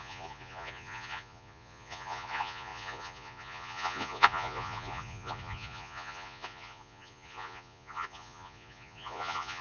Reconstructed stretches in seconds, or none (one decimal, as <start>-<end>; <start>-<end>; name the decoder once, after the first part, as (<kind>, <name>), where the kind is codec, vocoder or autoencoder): 0.0-9.6 (vocoder, Vocos)